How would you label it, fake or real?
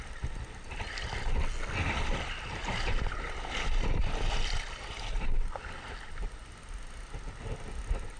real